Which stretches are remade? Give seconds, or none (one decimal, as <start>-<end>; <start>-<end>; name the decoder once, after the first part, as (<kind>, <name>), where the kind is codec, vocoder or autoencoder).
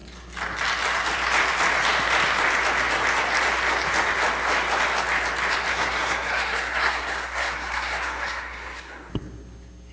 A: 5.7-9.1 (codec, SNAC)